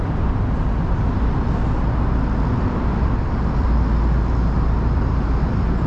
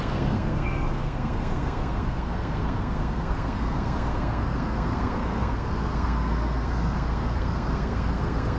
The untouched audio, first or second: first